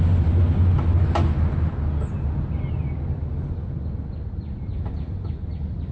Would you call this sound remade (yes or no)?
no